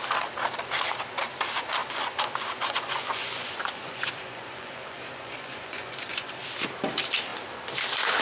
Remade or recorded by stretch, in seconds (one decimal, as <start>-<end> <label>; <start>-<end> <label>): 0.0-1.8 recorded; 1.8-6.3 remade; 6.3-8.2 recorded